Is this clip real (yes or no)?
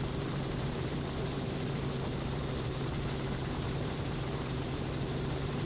no